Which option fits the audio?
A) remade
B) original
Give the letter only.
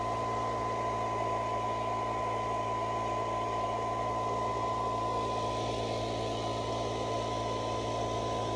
B